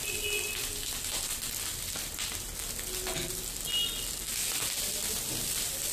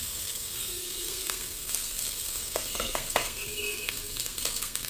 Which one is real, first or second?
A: first